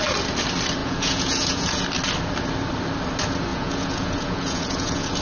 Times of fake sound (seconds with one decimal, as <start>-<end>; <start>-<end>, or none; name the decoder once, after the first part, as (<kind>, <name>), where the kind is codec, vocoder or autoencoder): 0.8-1.8 (vocoder, Vocos); 3.5-5.2